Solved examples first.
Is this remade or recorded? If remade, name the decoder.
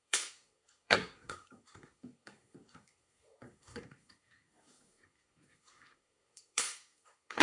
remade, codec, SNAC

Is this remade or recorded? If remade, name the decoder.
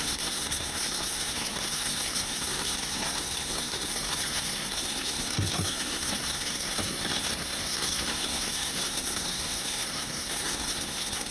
remade, codec, SNAC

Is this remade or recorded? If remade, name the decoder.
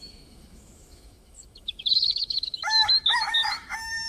remade, autoencoder, DAC-VAE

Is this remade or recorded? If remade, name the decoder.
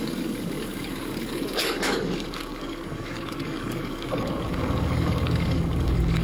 remade, codec, DAC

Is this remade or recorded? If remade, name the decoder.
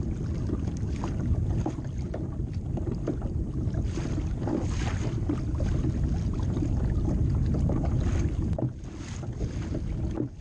recorded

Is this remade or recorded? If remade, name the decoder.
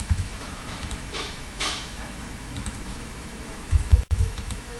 remade, autoencoder, DAC-VAE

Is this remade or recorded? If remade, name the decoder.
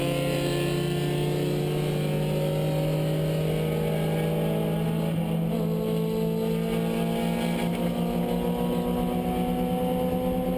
recorded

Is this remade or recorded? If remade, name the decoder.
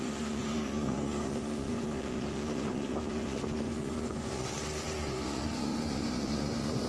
remade, vocoder, Vocos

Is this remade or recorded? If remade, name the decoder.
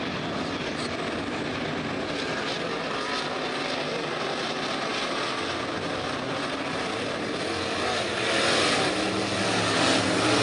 recorded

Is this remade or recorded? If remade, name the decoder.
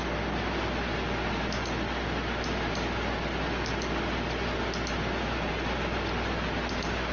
recorded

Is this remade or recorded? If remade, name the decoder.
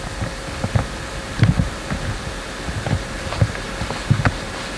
remade, vocoder, BigVGAN v2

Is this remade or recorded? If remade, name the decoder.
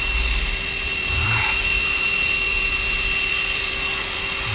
remade, vocoder, BigVGAN v2